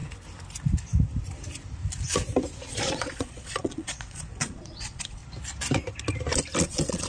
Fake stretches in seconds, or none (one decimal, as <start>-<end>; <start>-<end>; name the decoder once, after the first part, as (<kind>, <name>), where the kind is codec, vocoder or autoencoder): 2.7-5.2 (vocoder, Vocos); 6.6-7.1